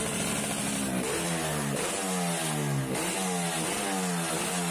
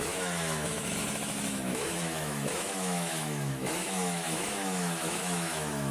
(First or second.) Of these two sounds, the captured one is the first